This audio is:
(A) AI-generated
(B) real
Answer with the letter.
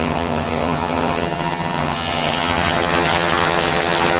A